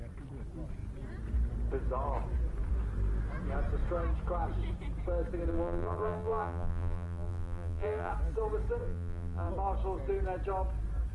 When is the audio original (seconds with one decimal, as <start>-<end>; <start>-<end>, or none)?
0.0-5.5; 8.1-8.8; 9.5-11.1